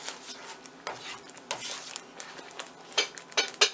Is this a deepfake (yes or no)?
no